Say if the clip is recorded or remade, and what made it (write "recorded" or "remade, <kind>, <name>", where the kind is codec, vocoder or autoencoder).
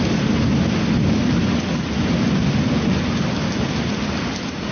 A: recorded